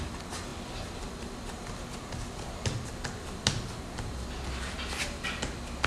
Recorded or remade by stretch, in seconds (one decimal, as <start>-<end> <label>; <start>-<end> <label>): 0.0-5.9 recorded